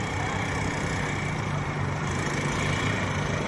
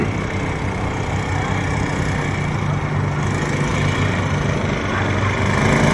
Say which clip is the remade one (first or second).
first